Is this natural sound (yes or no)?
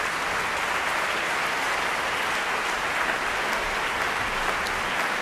yes